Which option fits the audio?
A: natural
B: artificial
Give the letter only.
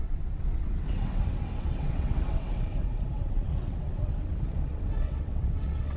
B